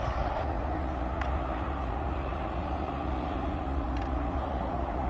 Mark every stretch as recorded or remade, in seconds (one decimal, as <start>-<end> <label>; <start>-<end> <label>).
0.0-5.1 remade